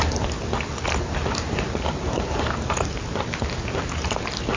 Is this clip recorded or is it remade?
recorded